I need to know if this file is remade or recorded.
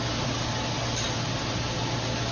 recorded